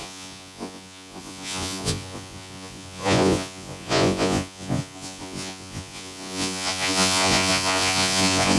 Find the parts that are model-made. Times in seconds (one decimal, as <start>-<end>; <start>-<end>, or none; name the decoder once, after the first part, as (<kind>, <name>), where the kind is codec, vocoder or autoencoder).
0.0-8.6 (vocoder, Vocos)